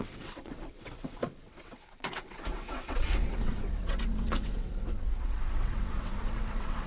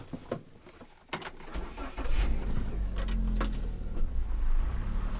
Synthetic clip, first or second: first